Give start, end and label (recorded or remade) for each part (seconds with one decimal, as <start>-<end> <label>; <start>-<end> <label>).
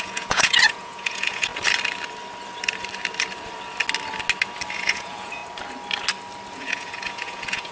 0.0-1.5 remade; 1.5-4.7 recorded; 4.7-5.4 remade; 5.4-6.5 recorded; 6.5-7.7 remade